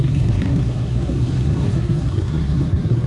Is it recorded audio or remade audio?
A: remade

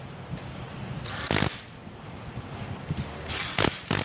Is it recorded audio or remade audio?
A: recorded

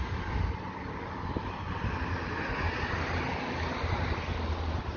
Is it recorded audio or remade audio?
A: recorded